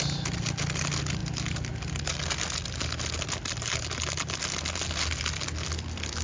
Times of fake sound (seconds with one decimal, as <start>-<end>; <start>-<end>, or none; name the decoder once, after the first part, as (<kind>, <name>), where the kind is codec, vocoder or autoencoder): none